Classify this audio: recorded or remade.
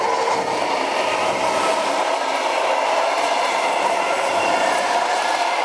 recorded